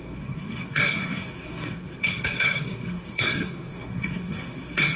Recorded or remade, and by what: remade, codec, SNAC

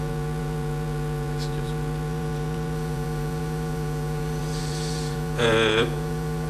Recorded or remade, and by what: remade, vocoder, Vocos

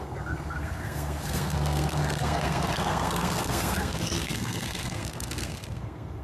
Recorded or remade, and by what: remade, codec, SNAC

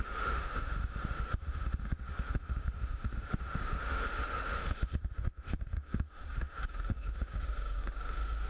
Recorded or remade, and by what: remade, autoencoder, DAC-VAE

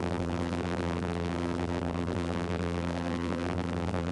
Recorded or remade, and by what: remade, vocoder, BigVGAN v2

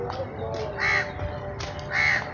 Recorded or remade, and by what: recorded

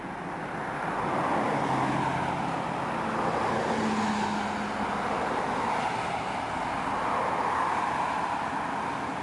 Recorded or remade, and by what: recorded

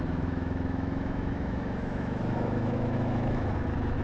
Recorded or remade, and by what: remade, autoencoder, DAC-VAE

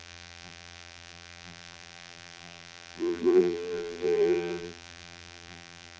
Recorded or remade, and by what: remade, vocoder, BigVGAN v2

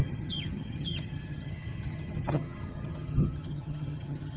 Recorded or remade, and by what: remade, vocoder, HiFi-GAN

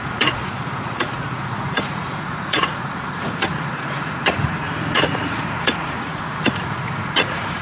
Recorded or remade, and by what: remade, vocoder, Vocos